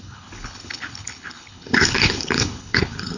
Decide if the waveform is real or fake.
fake